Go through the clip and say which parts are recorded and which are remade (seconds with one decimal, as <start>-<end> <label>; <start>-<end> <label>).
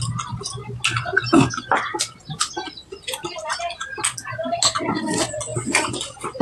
0.0-5.5 recorded; 5.5-6.4 remade